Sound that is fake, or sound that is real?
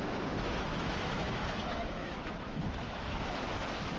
fake